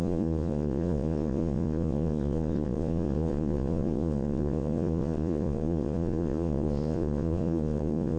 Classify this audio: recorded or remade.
remade